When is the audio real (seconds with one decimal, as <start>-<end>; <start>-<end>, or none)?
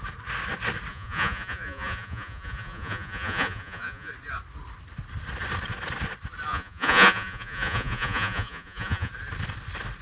0.0-0.9; 4.1-6.5; 9.1-10.0